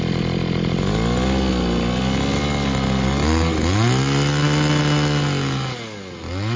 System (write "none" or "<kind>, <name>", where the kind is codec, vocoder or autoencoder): none